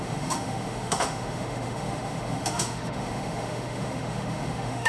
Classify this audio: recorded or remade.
remade